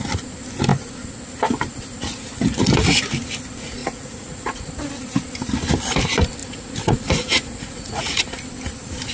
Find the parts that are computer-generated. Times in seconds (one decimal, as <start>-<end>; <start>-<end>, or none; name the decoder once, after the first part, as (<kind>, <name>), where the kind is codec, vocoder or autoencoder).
3.8-4.7 (vocoder, Vocos); 6.4-8.2